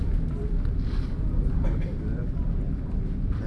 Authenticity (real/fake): fake